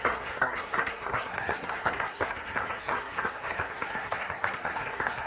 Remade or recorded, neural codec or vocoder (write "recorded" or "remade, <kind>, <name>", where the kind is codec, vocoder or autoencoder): remade, codec, SNAC